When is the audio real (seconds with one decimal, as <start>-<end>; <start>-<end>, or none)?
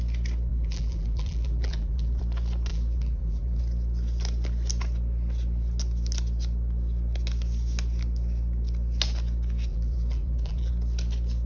0.0-0.5; 2.2-2.7; 3.6-9.7; 10.7-11.5